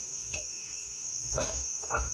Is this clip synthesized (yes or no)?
yes